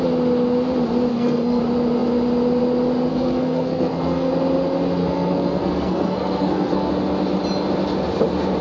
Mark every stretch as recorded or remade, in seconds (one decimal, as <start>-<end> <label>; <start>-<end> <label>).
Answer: 0.0-1.1 recorded; 1.1-1.6 remade; 1.6-3.1 recorded; 3.1-4.3 remade; 4.3-5.0 recorded; 5.0-6.9 remade; 6.9-8.6 recorded